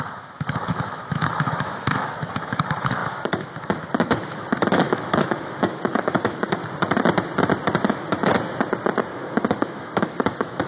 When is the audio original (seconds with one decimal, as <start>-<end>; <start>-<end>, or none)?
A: 6.6-7.9; 8.3-9.1